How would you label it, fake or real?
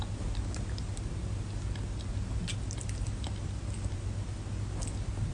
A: real